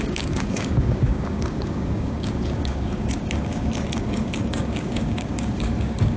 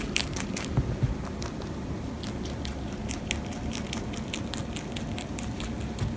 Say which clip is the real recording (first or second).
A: second